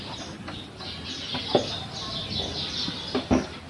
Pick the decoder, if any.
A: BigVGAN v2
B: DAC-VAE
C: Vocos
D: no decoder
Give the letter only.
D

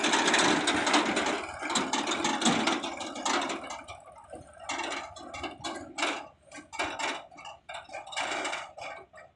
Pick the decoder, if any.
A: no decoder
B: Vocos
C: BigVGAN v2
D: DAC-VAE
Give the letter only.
A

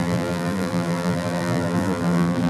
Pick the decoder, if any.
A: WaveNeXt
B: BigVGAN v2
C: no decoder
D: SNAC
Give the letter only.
B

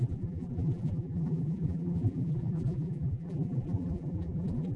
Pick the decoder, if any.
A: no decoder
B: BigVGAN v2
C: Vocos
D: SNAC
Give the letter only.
B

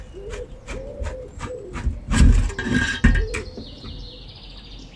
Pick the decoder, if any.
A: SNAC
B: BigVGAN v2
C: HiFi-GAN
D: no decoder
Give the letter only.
D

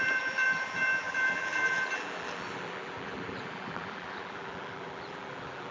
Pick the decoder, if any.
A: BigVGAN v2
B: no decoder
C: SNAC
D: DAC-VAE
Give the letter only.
A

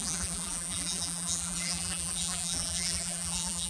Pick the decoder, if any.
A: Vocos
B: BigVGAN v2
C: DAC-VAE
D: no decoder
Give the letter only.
B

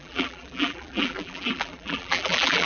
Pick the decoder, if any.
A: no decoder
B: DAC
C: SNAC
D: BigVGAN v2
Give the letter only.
D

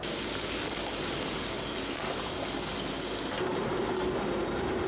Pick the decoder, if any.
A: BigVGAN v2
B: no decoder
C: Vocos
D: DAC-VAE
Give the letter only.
B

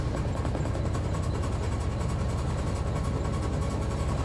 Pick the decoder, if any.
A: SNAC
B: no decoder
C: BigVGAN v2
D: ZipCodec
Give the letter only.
B